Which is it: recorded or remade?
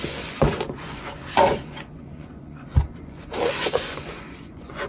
remade